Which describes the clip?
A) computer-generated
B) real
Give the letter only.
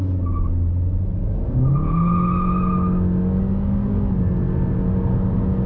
B